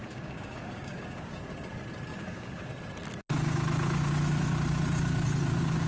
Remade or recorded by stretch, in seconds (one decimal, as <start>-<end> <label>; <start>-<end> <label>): 0.0-1.3 remade; 1.3-2.1 recorded; 2.1-2.7 remade; 2.7-5.9 recorded